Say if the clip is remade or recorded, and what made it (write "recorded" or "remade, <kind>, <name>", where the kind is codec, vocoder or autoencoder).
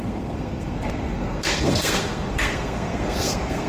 remade, codec, SNAC